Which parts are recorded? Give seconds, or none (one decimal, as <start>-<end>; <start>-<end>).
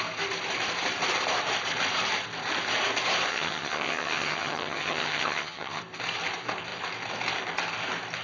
0.0-3.3; 5.8-8.2